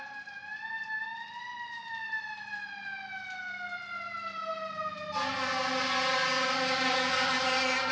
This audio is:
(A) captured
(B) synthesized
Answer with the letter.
A